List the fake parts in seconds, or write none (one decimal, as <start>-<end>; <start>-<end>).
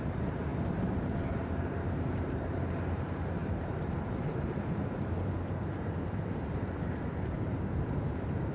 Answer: 0.0-8.5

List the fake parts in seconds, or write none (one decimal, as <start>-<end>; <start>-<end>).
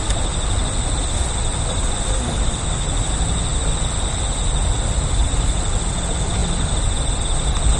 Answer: none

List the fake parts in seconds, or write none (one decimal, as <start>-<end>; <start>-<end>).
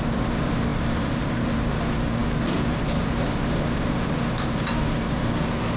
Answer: 0.0-5.8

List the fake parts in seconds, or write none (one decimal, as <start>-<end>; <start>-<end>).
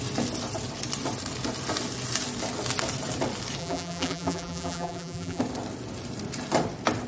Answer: 3.6-5.4